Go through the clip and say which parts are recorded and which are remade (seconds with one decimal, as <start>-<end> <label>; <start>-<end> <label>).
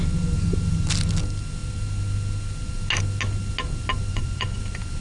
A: 0.0-4.1 recorded; 4.1-4.6 remade; 4.6-5.0 recorded